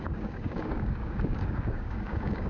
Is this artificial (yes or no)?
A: yes